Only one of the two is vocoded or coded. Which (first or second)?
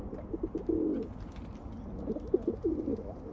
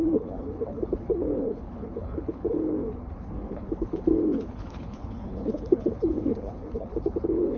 second